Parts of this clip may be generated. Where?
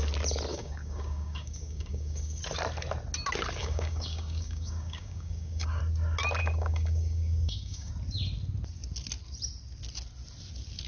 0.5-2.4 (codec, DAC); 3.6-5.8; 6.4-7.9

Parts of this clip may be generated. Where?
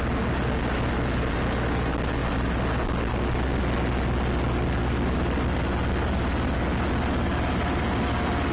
none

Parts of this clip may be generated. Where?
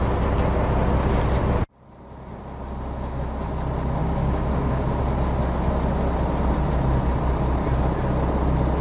4.0-5.0 (codec, DAC)